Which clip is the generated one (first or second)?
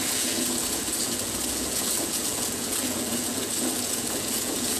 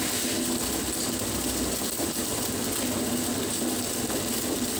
first